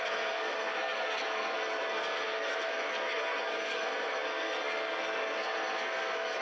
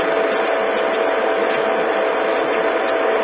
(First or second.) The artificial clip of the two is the first